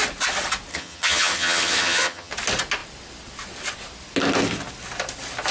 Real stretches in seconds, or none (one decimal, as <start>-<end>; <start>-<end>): 0.0-0.7; 2.3-5.5